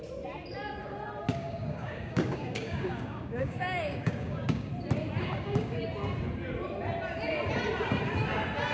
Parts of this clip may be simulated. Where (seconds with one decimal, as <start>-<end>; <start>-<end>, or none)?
1.4-4.7; 5.2-5.8